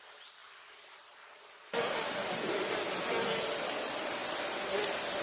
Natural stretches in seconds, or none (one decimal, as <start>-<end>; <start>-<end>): none